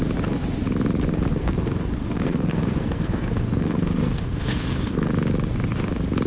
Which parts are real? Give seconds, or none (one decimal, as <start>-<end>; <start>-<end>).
0.0-1.3; 5.1-6.3